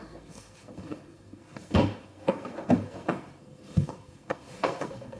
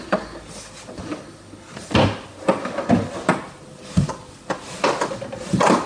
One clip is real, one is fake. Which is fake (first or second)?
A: first